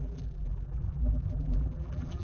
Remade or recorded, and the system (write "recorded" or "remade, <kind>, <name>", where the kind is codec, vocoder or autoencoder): remade, vocoder, BigVGAN v2